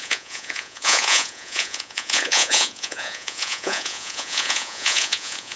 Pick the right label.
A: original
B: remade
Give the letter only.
B